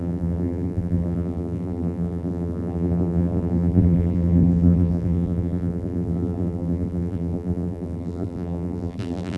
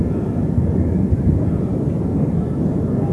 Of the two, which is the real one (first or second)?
second